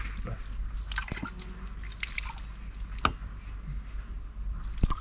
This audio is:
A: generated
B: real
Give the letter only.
B